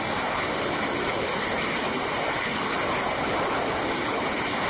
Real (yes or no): yes